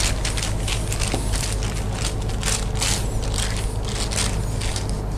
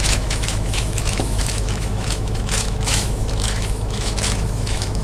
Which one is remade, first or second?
second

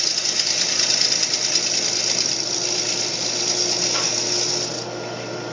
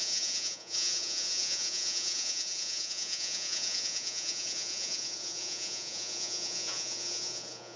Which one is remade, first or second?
second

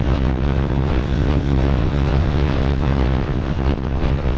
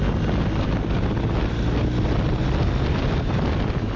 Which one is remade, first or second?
first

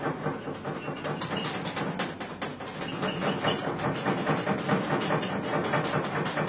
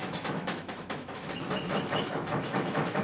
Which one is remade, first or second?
second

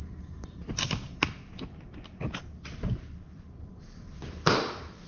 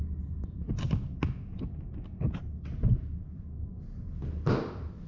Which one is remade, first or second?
first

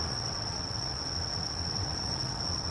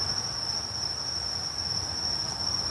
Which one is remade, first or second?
first